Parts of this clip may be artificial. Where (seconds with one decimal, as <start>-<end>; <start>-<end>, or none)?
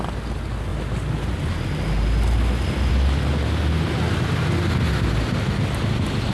none